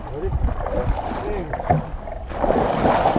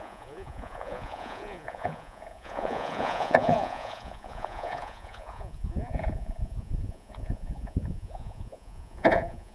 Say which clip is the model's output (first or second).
second